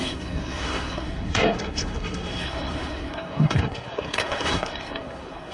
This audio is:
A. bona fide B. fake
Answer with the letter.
B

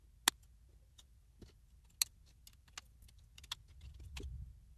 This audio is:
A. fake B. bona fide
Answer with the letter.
B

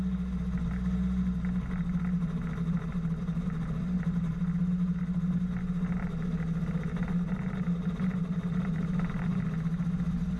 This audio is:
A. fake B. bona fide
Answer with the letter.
B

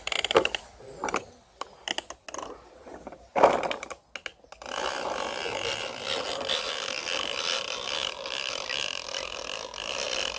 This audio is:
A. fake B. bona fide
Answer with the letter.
B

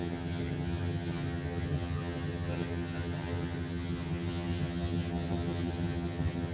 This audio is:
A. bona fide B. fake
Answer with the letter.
B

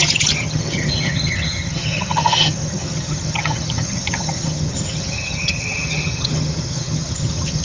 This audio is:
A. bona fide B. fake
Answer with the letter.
B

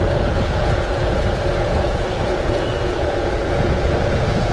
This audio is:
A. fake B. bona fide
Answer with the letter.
A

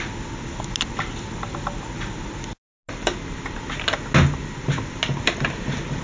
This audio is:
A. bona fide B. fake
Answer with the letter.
A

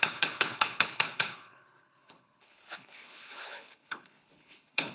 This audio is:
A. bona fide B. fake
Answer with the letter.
B